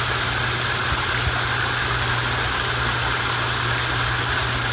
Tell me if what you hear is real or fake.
real